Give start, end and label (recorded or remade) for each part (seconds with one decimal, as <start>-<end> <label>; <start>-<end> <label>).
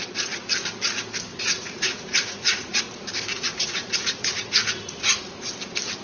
0.0-1.3 recorded; 1.3-2.8 remade; 2.8-3.3 recorded; 3.3-5.5 remade; 5.5-6.0 recorded